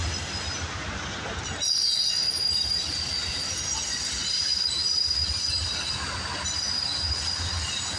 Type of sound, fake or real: real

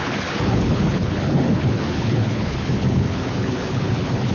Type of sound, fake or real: fake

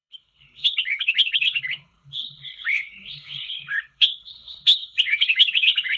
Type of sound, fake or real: fake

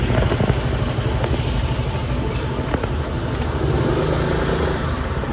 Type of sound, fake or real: real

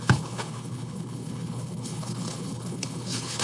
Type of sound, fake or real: fake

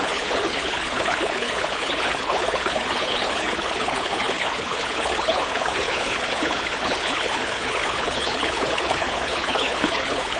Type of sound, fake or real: fake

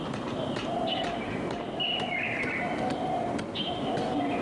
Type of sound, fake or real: real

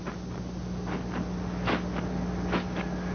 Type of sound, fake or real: real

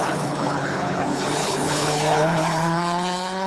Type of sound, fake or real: fake